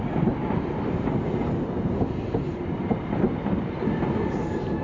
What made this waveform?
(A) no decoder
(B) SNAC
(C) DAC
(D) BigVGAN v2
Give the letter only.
A